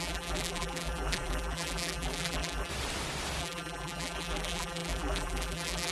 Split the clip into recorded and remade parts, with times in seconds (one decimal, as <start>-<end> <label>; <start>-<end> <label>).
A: 0.0-2.7 remade; 2.7-3.4 recorded; 3.4-5.9 remade